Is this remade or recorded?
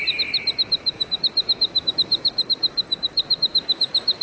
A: recorded